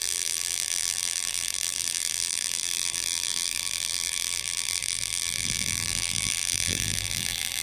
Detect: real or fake fake